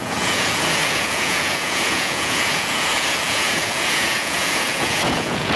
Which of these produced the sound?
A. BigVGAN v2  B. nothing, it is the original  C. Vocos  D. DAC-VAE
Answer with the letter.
C